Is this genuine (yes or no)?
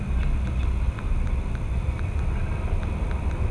yes